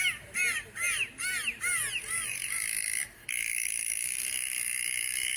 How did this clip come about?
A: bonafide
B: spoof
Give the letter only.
A